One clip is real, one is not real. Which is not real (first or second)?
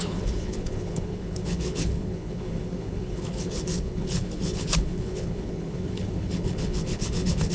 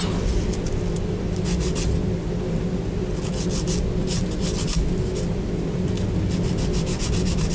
first